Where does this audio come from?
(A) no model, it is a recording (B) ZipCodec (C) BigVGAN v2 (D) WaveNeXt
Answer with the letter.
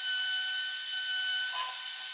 A